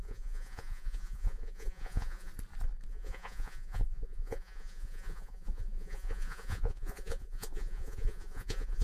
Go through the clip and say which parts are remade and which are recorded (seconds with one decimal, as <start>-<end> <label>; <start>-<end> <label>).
0.0-2.3 remade; 2.3-2.9 recorded; 2.9-8.8 remade